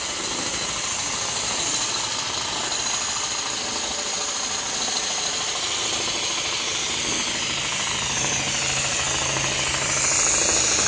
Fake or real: real